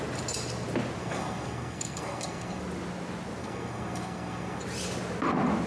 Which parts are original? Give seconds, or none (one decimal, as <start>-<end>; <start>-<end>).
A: 0.0-1.0; 2.6-3.4; 4.6-5.7

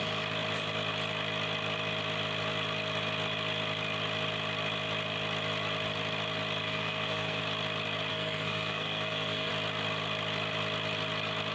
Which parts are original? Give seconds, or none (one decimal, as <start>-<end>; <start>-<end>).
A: 0.0-6.6; 7.4-8.1; 9.5-11.5

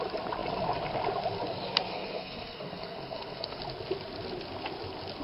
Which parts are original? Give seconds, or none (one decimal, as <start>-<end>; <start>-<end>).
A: 0.0-1.9; 3.6-5.2

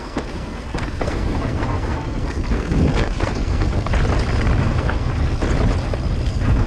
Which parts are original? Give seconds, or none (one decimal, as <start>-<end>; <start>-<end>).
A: 3.9-4.6; 5.1-6.3

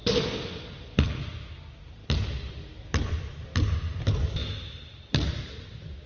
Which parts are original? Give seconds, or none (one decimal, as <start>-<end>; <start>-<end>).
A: 0.0-6.1